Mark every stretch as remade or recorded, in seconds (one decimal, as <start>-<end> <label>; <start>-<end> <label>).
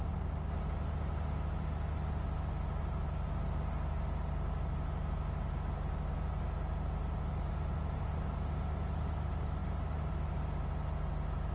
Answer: 0.0-11.5 recorded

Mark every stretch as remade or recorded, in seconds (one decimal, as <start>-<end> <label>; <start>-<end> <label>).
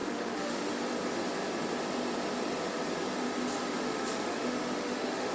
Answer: 0.0-0.8 remade; 0.8-3.8 recorded; 3.8-5.3 remade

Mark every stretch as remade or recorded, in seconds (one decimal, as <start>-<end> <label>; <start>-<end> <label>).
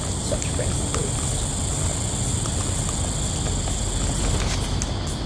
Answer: 0.0-5.3 recorded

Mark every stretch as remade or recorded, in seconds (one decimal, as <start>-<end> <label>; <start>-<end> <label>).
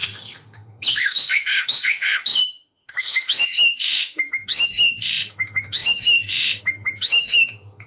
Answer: 0.0-7.9 remade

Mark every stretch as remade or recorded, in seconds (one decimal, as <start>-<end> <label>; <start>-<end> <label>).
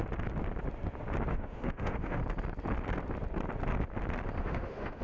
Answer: 0.0-1.3 recorded; 1.3-2.2 remade; 2.2-4.4 recorded; 4.4-5.0 remade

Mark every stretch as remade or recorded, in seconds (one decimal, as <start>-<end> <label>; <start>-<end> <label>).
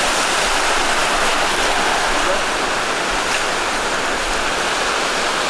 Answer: 0.0-5.5 recorded